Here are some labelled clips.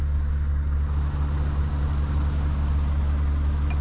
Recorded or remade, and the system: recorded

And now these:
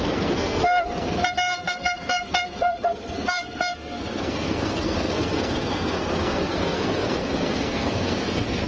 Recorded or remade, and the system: remade, codec, SNAC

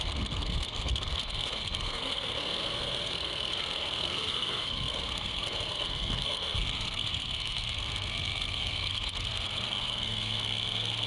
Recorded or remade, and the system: remade, codec, SNAC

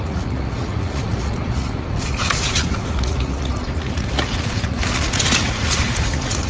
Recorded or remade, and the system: remade, vocoder, Vocos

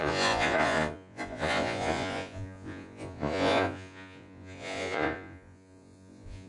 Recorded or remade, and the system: remade, vocoder, Vocos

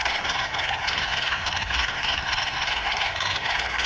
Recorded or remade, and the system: remade, codec, SNAC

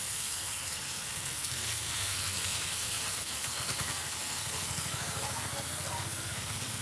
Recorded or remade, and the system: remade, codec, SNAC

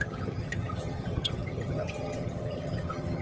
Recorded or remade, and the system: remade, vocoder, HiFi-GAN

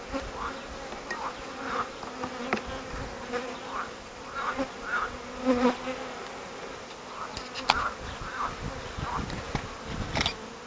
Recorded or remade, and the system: recorded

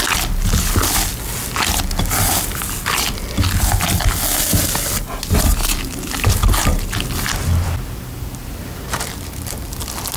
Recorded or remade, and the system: recorded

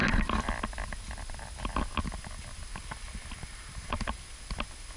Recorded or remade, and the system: recorded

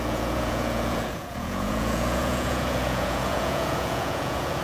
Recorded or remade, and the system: remade, vocoder, Vocos